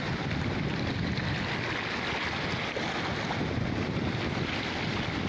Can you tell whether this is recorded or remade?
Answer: recorded